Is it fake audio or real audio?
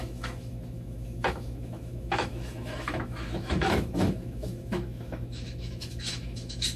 fake